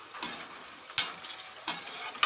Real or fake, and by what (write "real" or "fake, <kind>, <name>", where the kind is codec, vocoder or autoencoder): real